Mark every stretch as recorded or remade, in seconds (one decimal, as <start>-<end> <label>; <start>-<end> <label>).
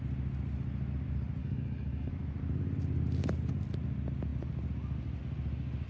0.0-1.4 recorded; 1.4-2.1 remade; 2.1-5.9 recorded